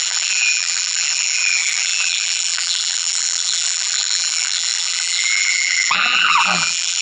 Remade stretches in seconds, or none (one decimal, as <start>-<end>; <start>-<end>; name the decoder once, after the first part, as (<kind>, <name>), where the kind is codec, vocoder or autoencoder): 0.0-7.0 (vocoder, BigVGAN v2)